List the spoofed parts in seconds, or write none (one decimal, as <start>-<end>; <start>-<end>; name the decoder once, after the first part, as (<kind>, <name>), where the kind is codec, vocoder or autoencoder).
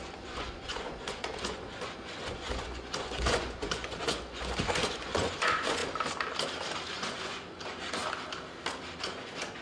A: 0.0-5.8 (vocoder, Vocos); 6.9-8.0; 9.0-9.6